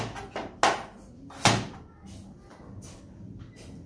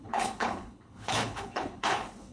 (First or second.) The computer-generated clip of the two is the second